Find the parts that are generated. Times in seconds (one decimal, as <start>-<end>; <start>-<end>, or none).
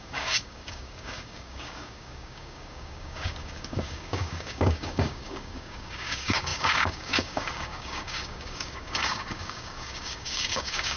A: 0.0-11.0